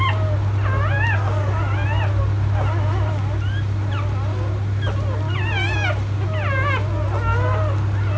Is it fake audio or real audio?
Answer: real